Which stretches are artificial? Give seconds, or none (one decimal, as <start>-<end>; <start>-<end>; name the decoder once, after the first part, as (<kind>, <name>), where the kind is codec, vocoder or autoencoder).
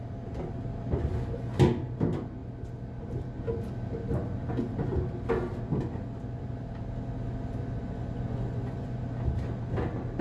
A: 7.8-9.0 (vocoder, Vocos)